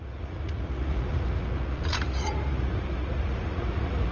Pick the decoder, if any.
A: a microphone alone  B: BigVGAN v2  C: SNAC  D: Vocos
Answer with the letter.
D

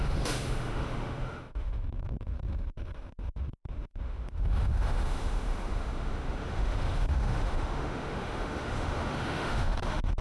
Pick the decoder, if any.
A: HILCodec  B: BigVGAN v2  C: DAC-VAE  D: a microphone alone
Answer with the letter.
C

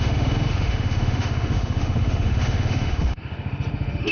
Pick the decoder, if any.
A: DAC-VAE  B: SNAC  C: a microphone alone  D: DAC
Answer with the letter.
A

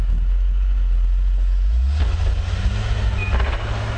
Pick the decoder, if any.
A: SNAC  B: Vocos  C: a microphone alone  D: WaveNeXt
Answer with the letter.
C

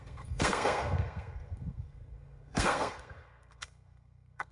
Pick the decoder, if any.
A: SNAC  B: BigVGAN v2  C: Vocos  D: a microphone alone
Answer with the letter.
A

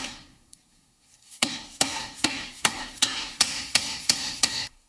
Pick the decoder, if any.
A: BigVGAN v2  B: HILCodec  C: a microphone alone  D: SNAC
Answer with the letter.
D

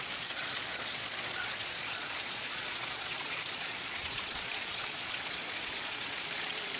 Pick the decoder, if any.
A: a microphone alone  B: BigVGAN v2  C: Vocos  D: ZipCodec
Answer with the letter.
C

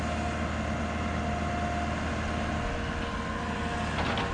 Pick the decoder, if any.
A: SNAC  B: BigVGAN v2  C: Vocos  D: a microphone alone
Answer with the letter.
D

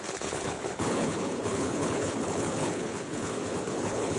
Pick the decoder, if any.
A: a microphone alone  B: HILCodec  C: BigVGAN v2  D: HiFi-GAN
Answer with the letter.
B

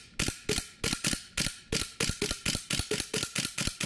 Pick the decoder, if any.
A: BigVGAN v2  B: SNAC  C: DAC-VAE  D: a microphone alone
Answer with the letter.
D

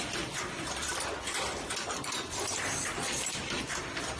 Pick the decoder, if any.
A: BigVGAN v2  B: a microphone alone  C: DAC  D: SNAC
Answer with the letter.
A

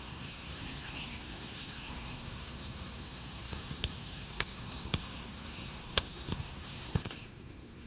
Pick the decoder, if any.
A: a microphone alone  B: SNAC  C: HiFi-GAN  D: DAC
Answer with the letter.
B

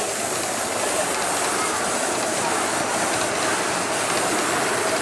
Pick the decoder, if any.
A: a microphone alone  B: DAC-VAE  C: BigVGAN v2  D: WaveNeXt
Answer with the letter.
C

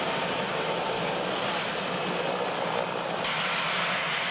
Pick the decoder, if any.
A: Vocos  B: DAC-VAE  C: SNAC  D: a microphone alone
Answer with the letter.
D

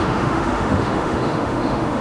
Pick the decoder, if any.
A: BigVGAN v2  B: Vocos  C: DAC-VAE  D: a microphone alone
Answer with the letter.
C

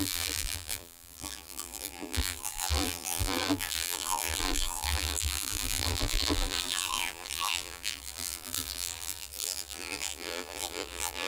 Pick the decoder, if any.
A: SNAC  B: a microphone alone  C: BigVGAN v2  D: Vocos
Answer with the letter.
C